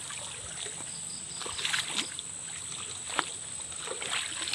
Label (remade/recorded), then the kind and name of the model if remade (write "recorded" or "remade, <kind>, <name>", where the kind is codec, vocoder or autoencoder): recorded